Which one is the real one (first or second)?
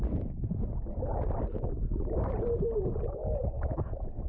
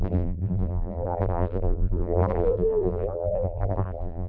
first